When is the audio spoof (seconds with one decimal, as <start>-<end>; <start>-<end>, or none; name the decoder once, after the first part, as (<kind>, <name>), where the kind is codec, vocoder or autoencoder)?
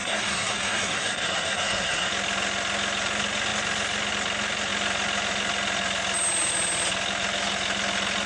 0.0-2.1 (codec, SNAC)